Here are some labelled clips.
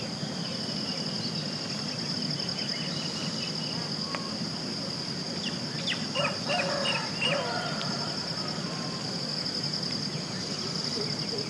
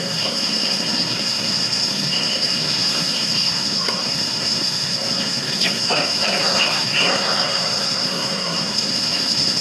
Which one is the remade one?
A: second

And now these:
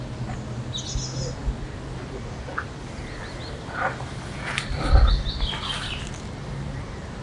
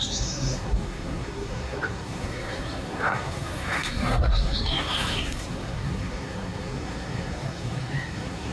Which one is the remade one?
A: second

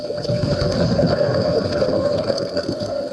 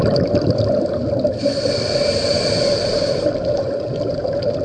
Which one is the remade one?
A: first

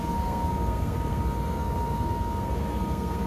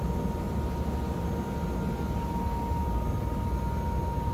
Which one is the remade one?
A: first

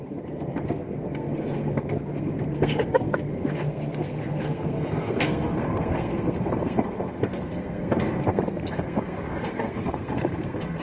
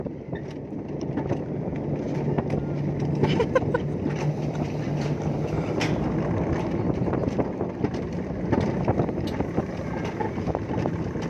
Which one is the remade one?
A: first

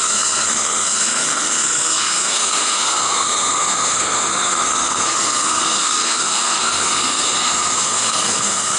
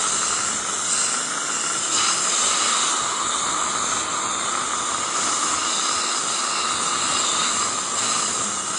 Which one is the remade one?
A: first